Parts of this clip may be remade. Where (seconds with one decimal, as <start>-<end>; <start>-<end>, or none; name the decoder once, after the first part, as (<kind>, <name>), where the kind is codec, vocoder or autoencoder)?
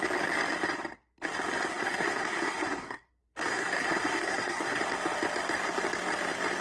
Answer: 1.7-3.1 (codec, SNAC); 3.5-4.8